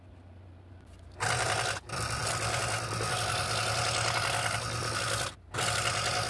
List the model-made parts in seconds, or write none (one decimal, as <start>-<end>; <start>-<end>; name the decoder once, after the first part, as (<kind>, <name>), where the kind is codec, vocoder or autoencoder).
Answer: none